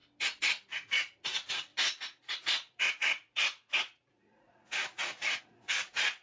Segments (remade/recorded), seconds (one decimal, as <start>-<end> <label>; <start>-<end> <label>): 0.0-0.7 recorded; 0.7-6.2 remade